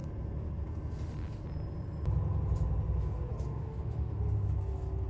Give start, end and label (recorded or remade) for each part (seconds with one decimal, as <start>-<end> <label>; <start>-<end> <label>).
0.0-3.3 recorded; 3.3-4.2 remade; 4.2-5.1 recorded